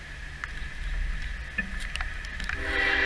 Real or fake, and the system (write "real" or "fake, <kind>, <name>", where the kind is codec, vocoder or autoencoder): real